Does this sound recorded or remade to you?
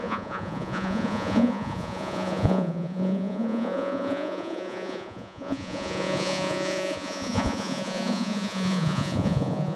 remade